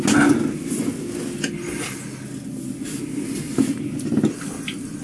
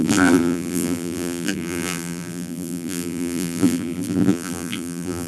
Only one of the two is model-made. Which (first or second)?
second